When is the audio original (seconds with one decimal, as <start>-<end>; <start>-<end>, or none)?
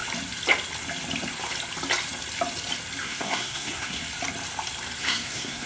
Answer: 0.0-3.0; 4.0-5.0